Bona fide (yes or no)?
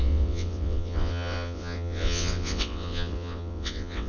no